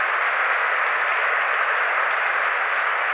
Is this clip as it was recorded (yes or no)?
yes